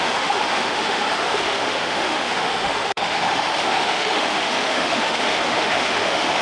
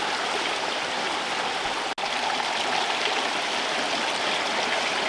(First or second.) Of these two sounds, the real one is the second